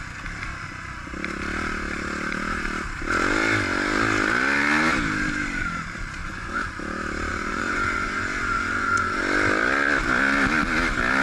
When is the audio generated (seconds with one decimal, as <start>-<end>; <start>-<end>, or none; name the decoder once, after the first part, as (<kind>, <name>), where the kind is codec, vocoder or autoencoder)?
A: 6.2-6.7 (vocoder, Vocos); 7.3-9.2